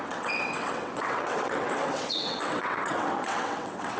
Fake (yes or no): yes